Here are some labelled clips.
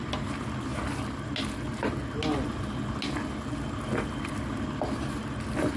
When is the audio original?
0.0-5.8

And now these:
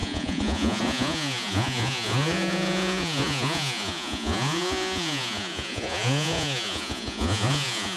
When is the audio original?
none

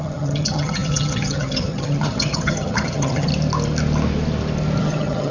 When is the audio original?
3.3-4.8